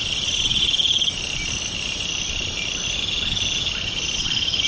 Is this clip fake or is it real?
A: real